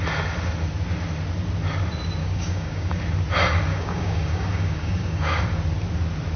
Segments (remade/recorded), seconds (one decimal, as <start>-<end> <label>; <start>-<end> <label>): 0.0-2.2 recorded; 2.2-3.0 remade; 3.0-3.7 recorded; 3.7-5.4 remade; 5.4-6.4 recorded